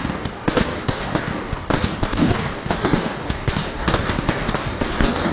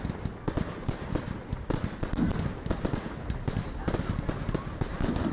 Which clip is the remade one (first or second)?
first